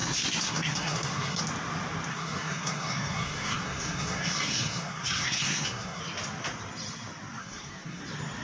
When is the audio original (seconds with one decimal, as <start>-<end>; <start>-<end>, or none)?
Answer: 1.4-2.1; 6.0-7.4; 8.0-8.4